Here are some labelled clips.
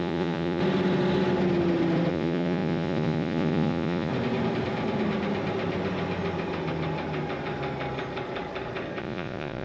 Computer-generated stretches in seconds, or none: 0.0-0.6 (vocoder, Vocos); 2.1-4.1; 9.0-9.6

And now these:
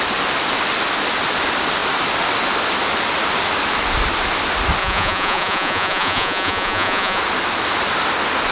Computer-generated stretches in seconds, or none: 4.8-7.2 (vocoder, Vocos)

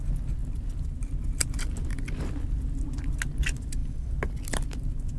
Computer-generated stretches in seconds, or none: none